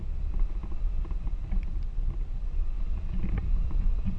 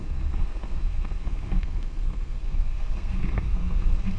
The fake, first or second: second